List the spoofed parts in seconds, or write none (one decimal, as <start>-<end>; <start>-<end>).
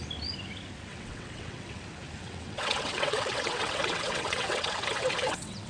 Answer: 0.9-1.8; 2.2-5.7